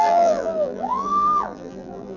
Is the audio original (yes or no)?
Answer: no